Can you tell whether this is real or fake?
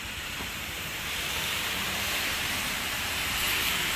fake